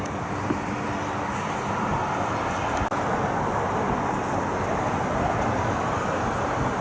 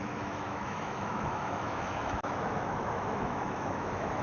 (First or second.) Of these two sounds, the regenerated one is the second